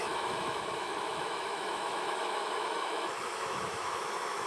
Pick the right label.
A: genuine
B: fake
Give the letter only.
B